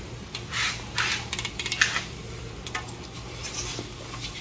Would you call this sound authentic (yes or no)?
yes